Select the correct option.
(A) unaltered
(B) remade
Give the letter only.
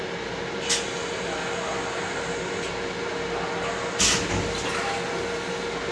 A